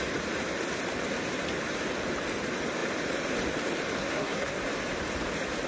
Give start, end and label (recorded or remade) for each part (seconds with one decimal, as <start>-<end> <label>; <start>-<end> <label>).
0.0-4.0 recorded; 4.0-4.6 remade; 4.6-5.7 recorded